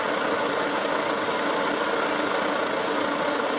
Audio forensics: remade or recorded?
recorded